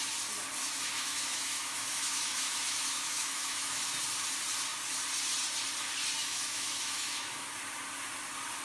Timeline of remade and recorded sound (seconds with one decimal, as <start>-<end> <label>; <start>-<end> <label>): 0.0-0.6 recorded; 0.6-3.9 remade; 3.9-6.2 recorded; 6.2-7.5 remade; 7.5-8.6 recorded